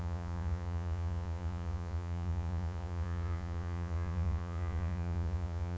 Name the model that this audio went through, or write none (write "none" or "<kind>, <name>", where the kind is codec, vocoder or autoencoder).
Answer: vocoder, Vocos